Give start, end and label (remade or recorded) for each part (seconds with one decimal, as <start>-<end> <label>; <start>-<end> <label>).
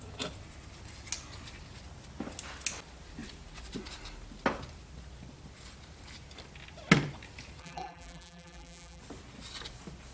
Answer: 0.0-7.6 recorded; 7.6-9.0 remade; 9.0-10.1 recorded